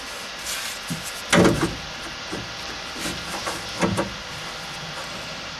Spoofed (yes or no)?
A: no